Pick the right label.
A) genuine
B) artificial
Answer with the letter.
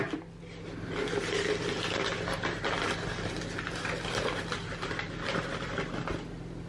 A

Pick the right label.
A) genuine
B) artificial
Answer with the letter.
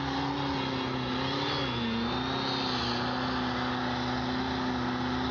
A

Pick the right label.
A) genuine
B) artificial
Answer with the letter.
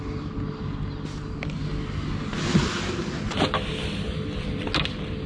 A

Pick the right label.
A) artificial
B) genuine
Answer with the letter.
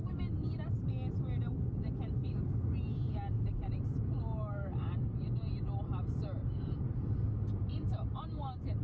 B